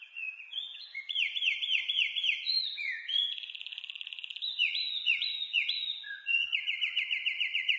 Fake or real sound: fake